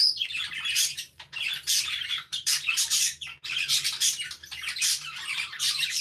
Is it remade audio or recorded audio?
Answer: remade